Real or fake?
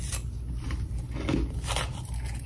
real